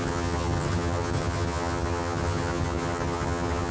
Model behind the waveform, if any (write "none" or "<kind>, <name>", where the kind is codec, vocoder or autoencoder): vocoder, HiFi-GAN